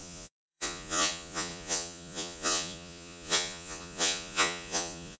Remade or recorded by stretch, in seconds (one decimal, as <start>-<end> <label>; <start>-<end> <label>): 0.0-5.2 remade